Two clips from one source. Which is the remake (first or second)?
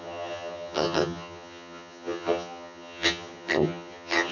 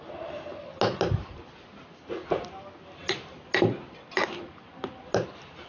first